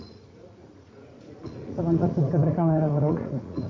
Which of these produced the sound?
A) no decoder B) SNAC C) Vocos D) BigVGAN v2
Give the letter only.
C